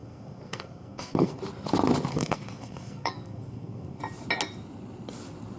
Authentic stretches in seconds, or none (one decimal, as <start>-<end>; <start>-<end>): 1.4-2.1; 4.0-5.6